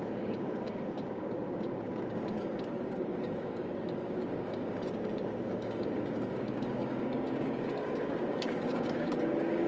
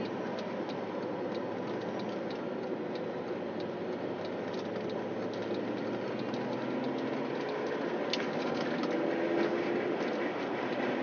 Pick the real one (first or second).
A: second